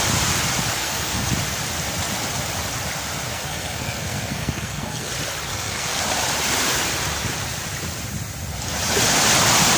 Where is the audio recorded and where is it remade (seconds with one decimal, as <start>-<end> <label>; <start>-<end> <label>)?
0.0-0.8 recorded; 0.8-1.3 remade; 1.3-3.3 recorded; 3.3-5.1 remade; 5.1-5.5 recorded; 5.5-6.0 remade; 6.0-9.8 recorded